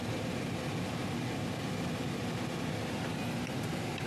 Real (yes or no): yes